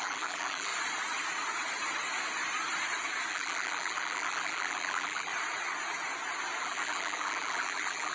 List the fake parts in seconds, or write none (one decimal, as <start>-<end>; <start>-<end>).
0.0-0.7; 3.3-5.3; 6.6-8.1